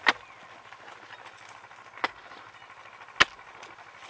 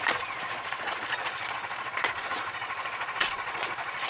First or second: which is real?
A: first